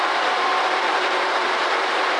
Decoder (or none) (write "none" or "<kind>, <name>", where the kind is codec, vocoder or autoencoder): vocoder, BigVGAN v2